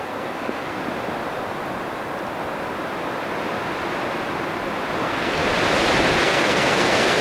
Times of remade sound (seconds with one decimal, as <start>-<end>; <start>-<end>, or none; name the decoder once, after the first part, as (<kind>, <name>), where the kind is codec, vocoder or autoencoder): 0.0-0.8 (codec, SNAC); 5.0-5.4; 6.2-7.2